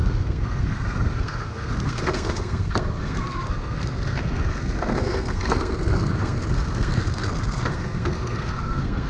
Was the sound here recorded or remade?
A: remade